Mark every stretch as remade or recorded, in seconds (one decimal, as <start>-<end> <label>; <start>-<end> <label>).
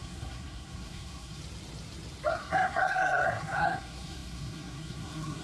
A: 0.0-1.4 remade; 1.4-2.3 recorded; 2.3-5.4 remade